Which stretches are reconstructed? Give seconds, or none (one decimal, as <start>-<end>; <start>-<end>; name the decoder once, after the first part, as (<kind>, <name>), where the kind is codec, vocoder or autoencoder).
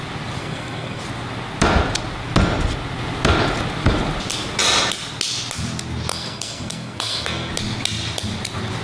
0.4-1.0 (codec, SNAC); 6.1-7.5